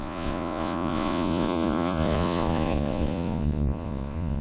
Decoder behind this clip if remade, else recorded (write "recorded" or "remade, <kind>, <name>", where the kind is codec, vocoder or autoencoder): remade, vocoder, Vocos